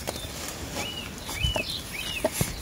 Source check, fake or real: real